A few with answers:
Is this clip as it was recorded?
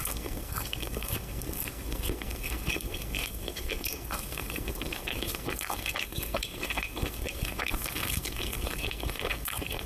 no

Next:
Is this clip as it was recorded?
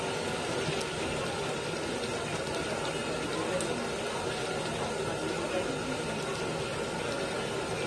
yes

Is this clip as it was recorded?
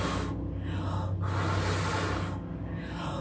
yes